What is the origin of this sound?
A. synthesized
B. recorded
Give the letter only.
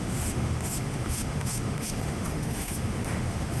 A